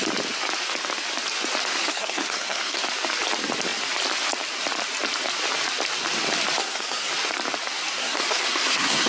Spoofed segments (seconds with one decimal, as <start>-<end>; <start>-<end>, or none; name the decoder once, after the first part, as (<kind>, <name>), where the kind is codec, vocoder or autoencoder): 1.7-2.8 (codec, SNAC); 6.6-7.1; 8.0-9.1

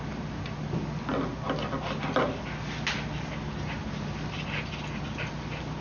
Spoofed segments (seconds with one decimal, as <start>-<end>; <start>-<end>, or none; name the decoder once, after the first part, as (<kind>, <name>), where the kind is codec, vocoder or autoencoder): none

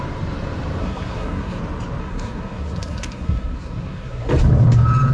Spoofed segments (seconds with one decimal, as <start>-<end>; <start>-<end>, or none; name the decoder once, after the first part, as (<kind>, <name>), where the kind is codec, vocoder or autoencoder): 0.8-1.6 (codec, SNAC); 2.0-4.3